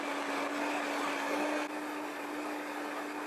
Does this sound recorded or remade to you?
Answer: recorded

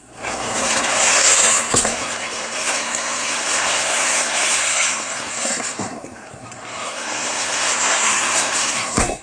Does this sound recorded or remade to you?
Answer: remade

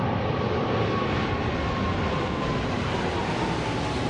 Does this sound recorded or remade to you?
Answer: recorded